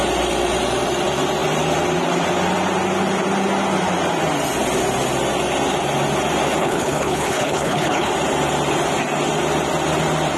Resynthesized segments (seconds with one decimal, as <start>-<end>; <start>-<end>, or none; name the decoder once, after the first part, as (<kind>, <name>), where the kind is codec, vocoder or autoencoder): 6.6-8.1 (codec, HILCodec)